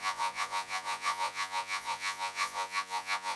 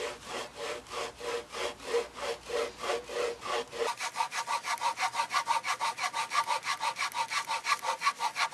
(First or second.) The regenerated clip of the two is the first